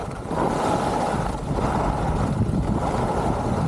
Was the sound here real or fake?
real